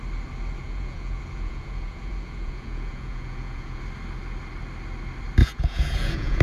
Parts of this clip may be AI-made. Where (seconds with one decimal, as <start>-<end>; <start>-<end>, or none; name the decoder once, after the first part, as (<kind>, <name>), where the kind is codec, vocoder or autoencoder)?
0.6-3.8 (vocoder, Vocos); 5.4-6.4